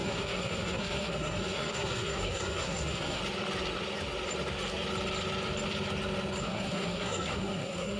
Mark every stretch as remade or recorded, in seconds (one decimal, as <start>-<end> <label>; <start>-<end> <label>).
0.0-3.2 remade; 3.2-6.4 recorded; 6.4-8.0 remade